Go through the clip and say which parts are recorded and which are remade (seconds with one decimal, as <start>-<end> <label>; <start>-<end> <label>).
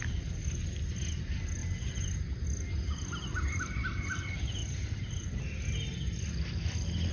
0.0-4.6 recorded; 4.6-5.4 remade; 5.4-7.1 recorded